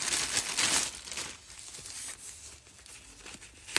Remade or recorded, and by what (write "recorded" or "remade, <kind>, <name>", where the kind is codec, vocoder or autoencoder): recorded